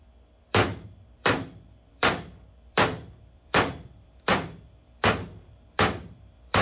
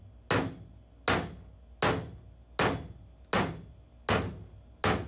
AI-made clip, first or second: first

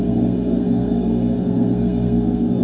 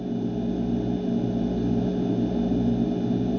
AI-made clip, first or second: first